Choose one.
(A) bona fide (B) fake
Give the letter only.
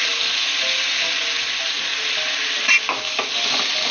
A